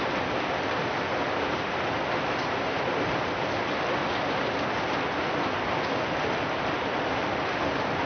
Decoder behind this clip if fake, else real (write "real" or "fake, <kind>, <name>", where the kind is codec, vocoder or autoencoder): real